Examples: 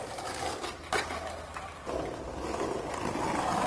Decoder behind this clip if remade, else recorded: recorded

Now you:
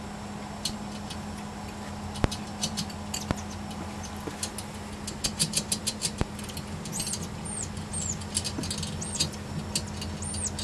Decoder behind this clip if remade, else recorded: recorded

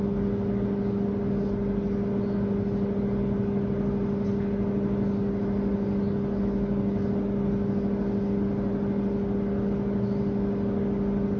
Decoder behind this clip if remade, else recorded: recorded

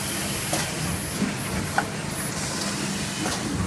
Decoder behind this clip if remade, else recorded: recorded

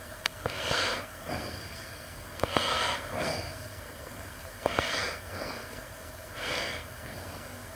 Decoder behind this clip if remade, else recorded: remade, codec, SNAC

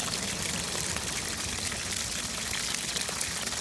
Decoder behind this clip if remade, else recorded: recorded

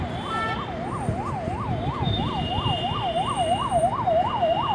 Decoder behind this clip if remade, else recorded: recorded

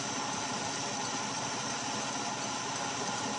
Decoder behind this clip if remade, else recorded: recorded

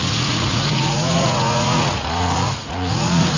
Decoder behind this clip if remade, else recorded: remade, vocoder, Vocos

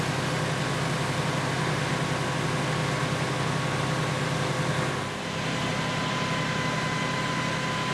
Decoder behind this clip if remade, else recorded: recorded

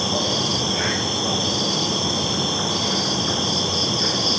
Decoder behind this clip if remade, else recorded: recorded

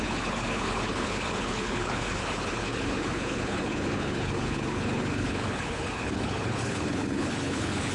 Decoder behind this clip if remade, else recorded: remade, codec, HILCodec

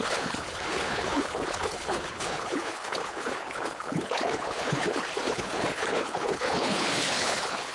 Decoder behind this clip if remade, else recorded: remade, codec, HILCodec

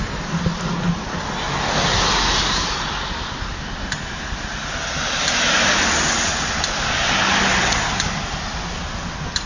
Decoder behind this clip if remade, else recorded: recorded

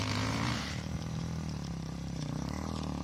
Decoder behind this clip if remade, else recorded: remade, vocoder, BigVGAN v2